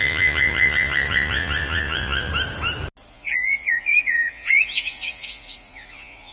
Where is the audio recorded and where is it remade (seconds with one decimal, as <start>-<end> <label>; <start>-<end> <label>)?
0.0-2.3 remade; 2.3-3.1 recorded; 3.1-6.3 remade